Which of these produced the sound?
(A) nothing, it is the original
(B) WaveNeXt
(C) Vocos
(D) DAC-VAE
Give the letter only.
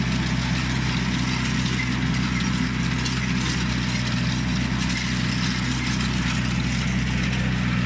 A